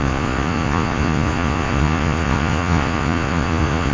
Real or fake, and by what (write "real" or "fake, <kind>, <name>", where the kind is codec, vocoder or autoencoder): fake, vocoder, Vocos